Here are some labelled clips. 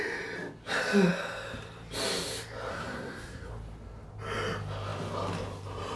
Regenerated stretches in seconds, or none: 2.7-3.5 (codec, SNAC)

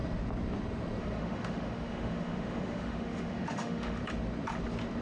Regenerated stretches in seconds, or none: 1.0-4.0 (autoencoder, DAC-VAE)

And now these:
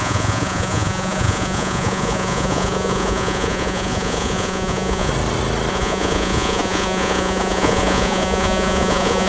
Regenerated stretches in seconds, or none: 0.0-5.1 (vocoder, Vocos); 5.7-9.3